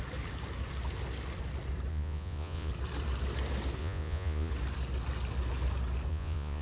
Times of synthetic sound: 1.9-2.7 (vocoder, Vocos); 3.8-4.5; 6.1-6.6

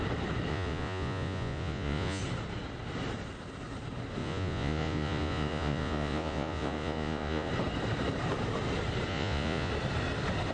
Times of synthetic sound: 0.5-2.2 (vocoder, Vocos); 4.2-7.5; 9.1-9.7

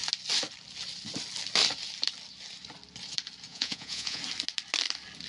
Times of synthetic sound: 3.5-4.2 (vocoder, Vocos)